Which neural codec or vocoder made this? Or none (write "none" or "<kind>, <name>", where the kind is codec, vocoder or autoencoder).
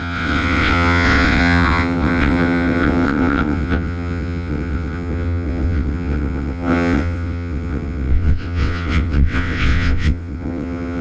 vocoder, WaveNeXt